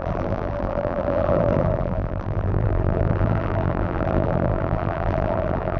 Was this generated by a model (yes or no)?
yes